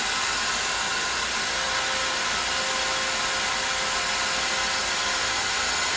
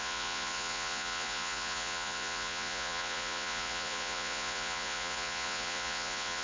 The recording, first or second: first